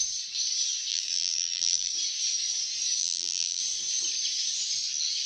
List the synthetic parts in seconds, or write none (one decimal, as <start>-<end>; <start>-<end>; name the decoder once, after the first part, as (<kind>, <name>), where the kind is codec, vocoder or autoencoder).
0.9-1.9 (vocoder, BigVGAN v2); 3.0-3.6